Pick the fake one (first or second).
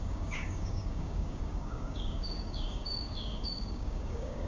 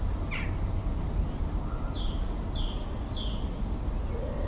first